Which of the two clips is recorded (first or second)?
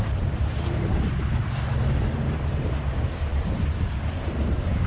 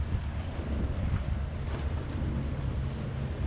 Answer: second